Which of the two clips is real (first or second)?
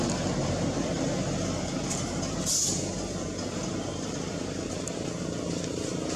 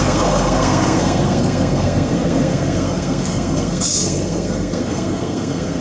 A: first